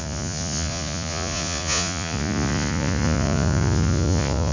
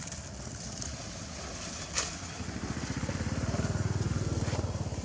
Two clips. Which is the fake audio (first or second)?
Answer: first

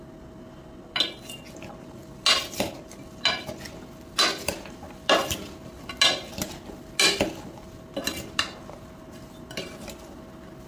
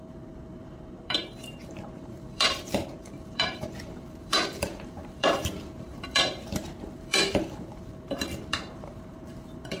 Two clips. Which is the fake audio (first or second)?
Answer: second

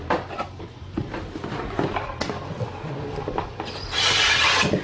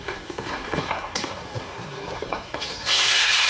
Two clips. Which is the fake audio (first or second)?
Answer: second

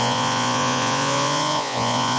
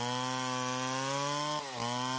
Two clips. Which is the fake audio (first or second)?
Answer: first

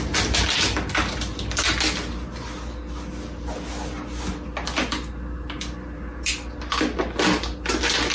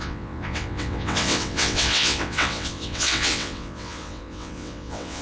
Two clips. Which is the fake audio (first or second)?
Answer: second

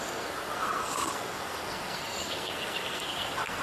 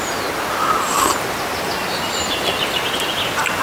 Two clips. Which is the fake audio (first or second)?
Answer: first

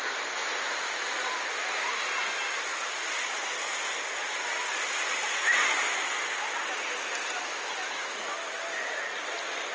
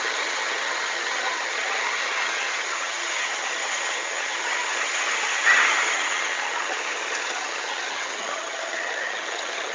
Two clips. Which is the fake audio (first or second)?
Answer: second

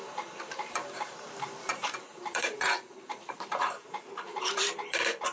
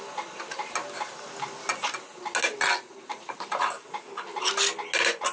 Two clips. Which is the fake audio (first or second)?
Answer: first